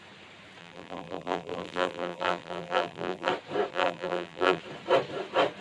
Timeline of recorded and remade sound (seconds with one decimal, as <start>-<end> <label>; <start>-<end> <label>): 0.0-0.6 recorded; 0.6-3.3 remade; 3.3-3.7 recorded; 3.7-4.6 remade; 4.6-5.6 recorded